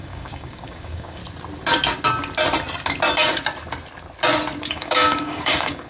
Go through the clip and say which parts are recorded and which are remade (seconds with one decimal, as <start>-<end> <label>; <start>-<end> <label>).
0.0-1.2 remade; 1.2-4.7 recorded; 4.7-5.9 remade